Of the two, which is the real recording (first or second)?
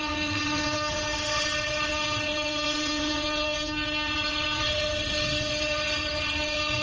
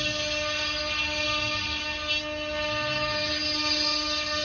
second